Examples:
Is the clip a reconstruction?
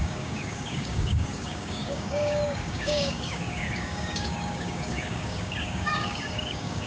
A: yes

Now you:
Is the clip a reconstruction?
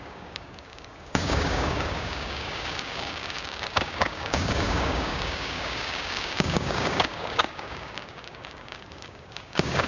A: yes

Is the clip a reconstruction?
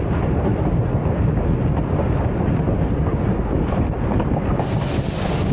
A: no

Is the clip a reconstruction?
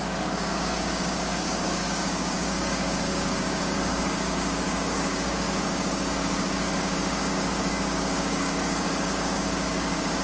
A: yes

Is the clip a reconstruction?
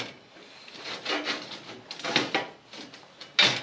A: no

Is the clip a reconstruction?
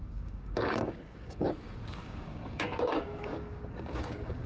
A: yes